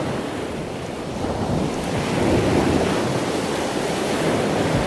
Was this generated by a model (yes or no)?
no